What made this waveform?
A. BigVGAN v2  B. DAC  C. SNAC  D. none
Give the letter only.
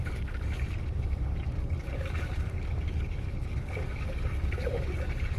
B